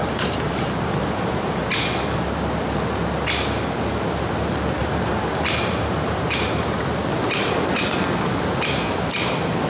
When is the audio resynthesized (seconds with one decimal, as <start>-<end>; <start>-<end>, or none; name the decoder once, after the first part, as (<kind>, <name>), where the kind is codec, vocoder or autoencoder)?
0.0-1.7 (vocoder, BigVGAN v2); 4.8-6.8